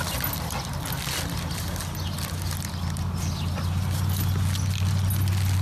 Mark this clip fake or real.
real